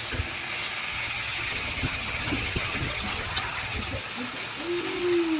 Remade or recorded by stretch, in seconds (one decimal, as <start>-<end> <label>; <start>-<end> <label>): 0.0-0.9 recorded; 0.9-4.0 remade; 4.0-5.4 recorded